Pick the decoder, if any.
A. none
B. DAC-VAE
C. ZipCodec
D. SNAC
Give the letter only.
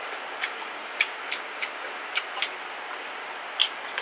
A